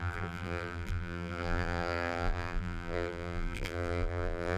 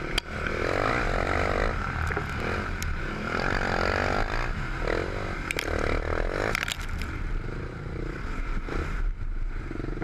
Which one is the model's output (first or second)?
first